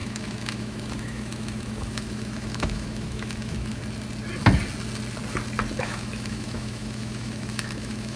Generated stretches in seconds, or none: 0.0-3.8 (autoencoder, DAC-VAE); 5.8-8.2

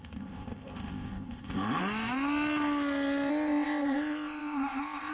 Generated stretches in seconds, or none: 0.0-1.8 (codec, ZipCodec); 3.3-5.1

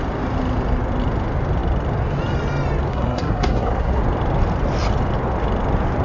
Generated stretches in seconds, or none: 2.9-4.0 (codec, SNAC)

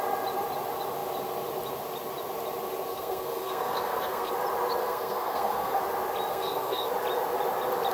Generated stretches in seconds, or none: 2.9-4.3 (codec, SNAC); 4.8-5.8; 6.3-6.9

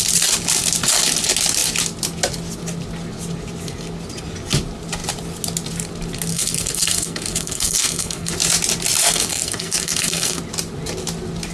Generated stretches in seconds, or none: 6.3-8.3 (codec, SNAC); 9.0-10.4